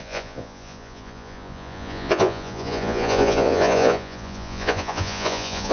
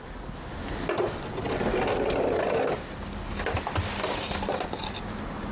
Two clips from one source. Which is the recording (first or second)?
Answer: second